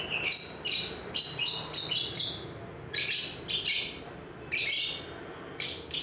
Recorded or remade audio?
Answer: recorded